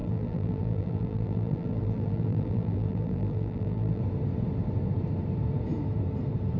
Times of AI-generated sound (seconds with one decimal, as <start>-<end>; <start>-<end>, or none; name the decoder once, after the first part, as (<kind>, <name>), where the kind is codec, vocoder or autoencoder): 0.0-4.0 (vocoder, BigVGAN v2)